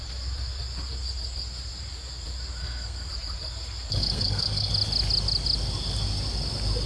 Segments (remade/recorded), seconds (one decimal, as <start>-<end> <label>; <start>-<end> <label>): 0.0-2.6 recorded; 2.6-3.1 remade; 3.1-3.9 recorded; 3.9-4.7 remade; 4.7-6.9 recorded